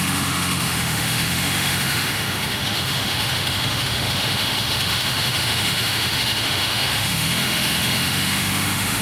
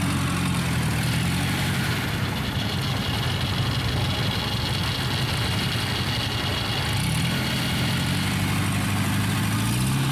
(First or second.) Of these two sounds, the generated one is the first